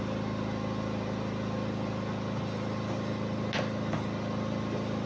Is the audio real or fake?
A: real